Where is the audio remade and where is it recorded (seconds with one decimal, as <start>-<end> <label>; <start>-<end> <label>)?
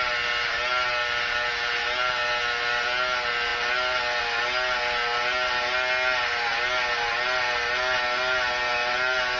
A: 0.0-9.4 recorded